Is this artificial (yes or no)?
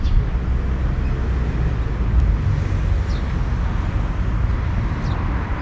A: no